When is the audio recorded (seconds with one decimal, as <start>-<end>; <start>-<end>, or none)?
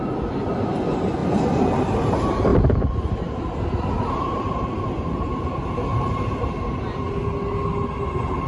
0.0-1.2; 2.1-2.5; 4.8-5.9; 6.4-8.5